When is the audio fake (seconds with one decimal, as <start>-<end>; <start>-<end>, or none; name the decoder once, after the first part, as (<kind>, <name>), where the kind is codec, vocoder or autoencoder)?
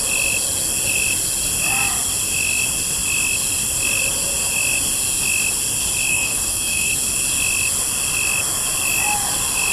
6.1-6.9 (codec, SNAC)